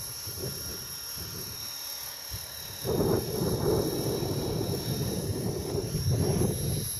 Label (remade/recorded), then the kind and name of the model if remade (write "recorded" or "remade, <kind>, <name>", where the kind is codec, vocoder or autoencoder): recorded